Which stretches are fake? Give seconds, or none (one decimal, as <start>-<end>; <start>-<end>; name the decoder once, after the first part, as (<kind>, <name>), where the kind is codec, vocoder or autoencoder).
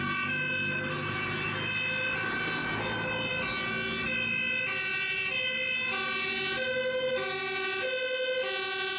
none